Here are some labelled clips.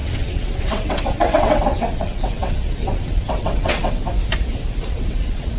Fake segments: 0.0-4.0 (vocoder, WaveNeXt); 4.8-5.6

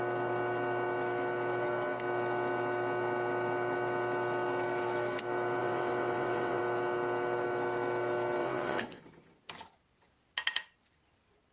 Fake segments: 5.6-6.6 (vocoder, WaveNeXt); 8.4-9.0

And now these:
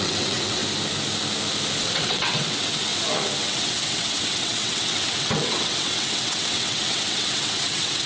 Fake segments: 0.0-0.6 (vocoder, WaveNeXt); 1.8-2.9; 3.4-8.1

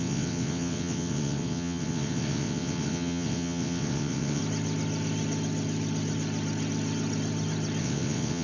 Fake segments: 0.0-4.4 (vocoder, WaveNeXt); 7.8-8.4

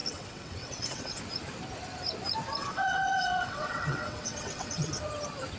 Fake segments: 0.0-1.2 (vocoder, WaveNeXt); 2.6-5.0